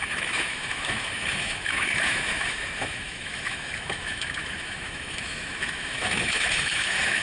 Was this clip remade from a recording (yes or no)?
yes